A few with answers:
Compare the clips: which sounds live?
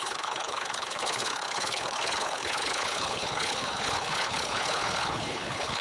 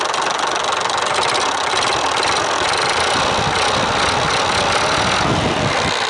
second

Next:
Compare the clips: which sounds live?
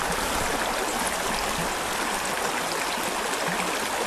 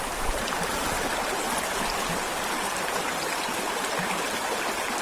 first